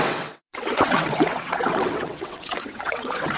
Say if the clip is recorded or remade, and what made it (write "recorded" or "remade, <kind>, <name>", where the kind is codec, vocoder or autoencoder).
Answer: remade, vocoder, WaveNeXt